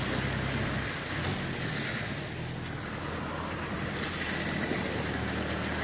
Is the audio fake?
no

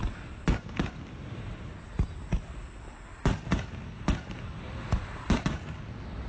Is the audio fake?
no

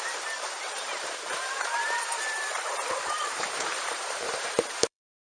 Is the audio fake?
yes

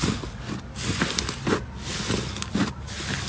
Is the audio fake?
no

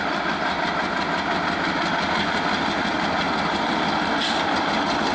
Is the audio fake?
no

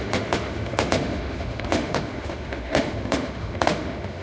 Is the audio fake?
yes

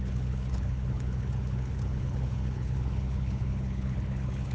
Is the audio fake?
yes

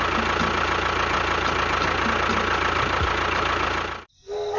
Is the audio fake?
no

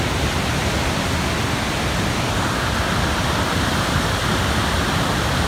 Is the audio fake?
no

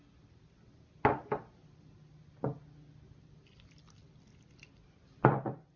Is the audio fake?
no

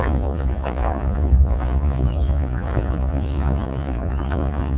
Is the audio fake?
yes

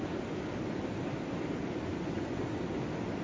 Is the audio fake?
no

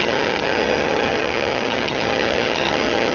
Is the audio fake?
yes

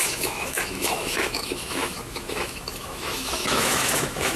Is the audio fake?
yes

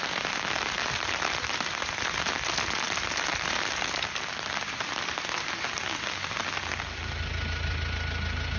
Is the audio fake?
no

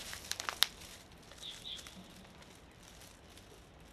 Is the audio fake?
no